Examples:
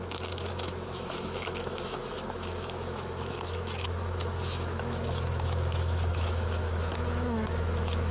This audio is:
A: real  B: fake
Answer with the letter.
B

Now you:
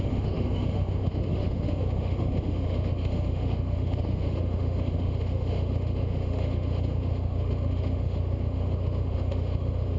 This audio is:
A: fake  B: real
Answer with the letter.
A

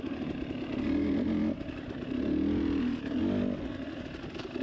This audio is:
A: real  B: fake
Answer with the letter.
A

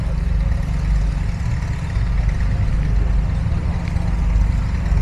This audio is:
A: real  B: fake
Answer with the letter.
A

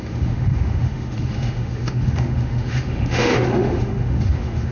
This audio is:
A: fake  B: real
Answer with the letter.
A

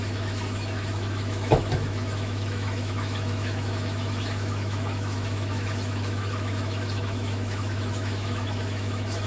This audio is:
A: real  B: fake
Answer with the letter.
B